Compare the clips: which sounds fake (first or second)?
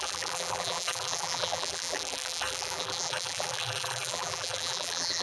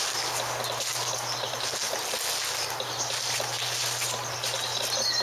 first